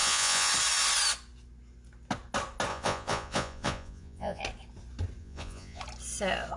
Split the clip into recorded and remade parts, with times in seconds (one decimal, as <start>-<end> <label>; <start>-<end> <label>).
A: 0.0-0.5 remade; 0.5-2.7 recorded; 2.7-4.4 remade; 4.4-5.2 recorded; 5.2-5.8 remade; 5.8-6.6 recorded